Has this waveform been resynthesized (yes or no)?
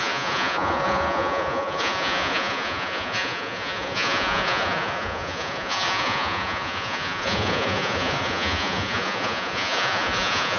yes